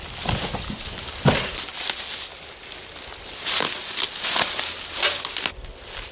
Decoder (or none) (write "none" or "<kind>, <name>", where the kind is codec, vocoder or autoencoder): none